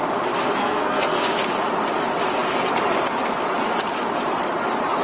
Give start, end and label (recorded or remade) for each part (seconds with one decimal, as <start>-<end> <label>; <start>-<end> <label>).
0.0-0.6 recorded; 0.6-1.3 remade; 1.3-5.0 recorded